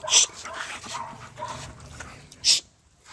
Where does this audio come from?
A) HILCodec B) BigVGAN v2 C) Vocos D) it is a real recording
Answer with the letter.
D